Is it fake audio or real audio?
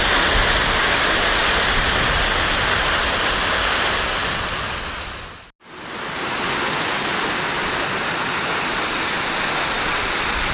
real